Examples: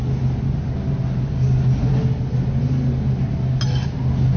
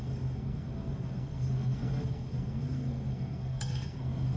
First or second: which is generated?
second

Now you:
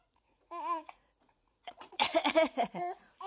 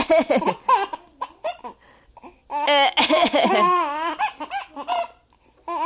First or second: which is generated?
first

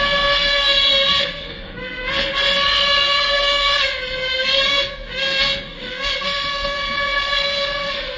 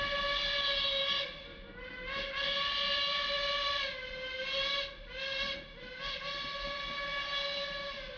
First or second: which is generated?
first